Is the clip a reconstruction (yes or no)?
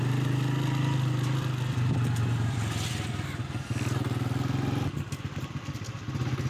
no